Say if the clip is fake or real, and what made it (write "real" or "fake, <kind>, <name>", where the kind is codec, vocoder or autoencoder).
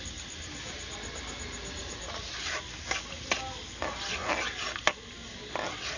real